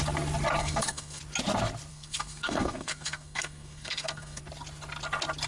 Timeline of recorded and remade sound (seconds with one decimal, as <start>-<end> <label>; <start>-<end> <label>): 0.0-0.6 recorded; 0.6-1.2 remade; 1.2-1.9 recorded; 1.9-4.4 remade; 4.4-5.5 recorded